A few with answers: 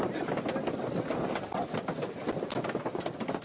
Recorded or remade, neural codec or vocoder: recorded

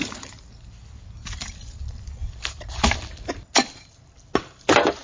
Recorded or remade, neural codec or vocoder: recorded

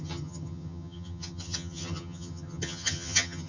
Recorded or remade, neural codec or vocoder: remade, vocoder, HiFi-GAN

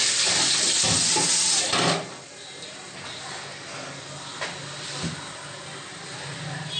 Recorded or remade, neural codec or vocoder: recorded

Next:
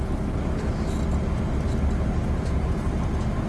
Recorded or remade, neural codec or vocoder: recorded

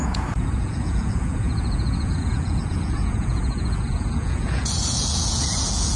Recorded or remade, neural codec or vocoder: remade, vocoder, Vocos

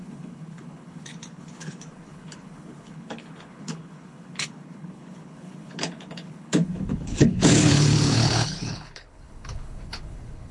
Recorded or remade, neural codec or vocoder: remade, codec, HILCodec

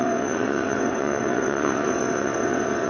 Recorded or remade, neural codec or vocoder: remade, vocoder, WaveNeXt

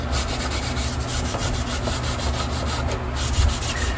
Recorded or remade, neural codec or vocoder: recorded